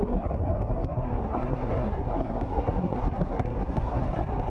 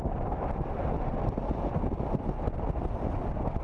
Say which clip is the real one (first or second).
second